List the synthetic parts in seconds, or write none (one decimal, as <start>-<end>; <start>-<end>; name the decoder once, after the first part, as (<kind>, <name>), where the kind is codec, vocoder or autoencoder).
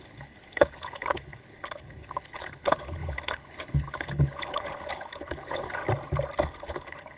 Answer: 0.0-5.8 (codec, HILCodec); 6.5-7.2